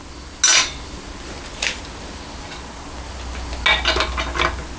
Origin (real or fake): real